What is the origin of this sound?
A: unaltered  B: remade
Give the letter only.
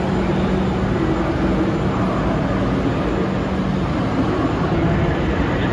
A